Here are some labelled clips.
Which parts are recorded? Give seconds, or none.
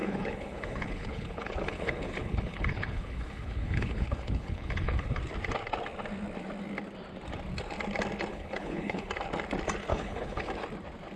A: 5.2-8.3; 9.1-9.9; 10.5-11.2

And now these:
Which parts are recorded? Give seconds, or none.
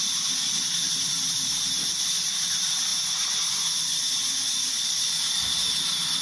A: 0.0-6.2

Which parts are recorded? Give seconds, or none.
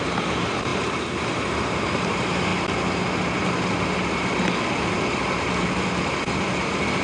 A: 2.5-7.0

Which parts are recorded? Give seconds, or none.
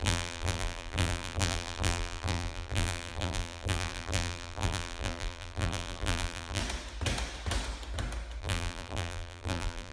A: 6.6-8.4